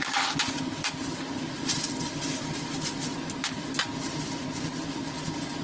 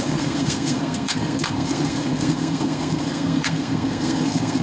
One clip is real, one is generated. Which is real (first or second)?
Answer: first